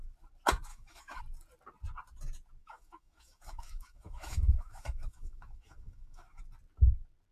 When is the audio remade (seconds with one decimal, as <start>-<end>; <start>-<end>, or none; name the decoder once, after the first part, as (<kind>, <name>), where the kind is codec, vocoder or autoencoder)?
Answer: 0.7-1.2 (autoencoder, DAC-VAE); 2.6-6.4